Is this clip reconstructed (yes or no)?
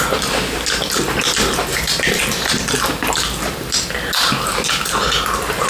no